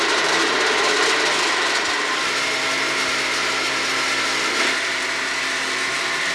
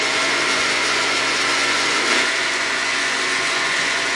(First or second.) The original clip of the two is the first